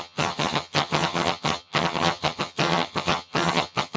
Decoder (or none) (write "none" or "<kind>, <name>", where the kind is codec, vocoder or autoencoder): vocoder, HiFi-GAN